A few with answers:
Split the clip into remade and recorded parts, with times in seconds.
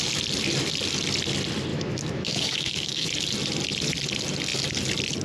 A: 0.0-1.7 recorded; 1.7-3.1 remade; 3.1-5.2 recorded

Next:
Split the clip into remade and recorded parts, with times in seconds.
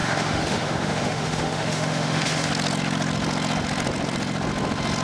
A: 0.0-2.5 remade; 2.5-5.0 recorded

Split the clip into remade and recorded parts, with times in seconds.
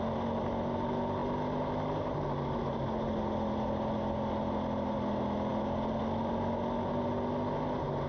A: 0.0-8.1 recorded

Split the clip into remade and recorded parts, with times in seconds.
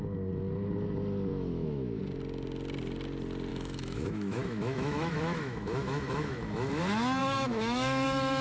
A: 0.0-1.3 recorded; 1.3-2.0 remade; 2.0-3.5 recorded; 3.5-6.7 remade; 6.7-7.2 recorded; 7.2-8.4 remade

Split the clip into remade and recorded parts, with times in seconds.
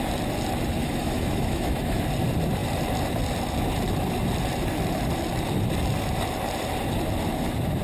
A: 0.0-0.8 recorded; 0.8-2.0 remade; 2.0-7.8 recorded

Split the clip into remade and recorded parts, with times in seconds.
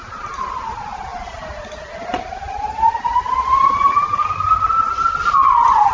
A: 0.0-5.9 recorded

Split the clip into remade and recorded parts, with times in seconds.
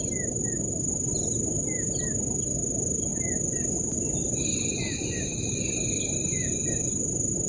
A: 0.0-7.5 recorded